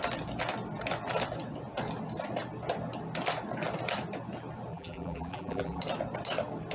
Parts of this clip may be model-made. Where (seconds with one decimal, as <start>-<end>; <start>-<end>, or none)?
4.7-5.8